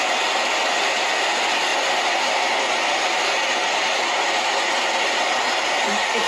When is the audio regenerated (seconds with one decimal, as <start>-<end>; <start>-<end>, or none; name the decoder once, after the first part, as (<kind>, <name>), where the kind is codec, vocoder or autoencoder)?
none